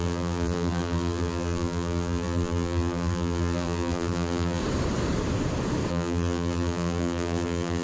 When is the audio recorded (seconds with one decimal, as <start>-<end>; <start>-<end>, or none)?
4.6-5.9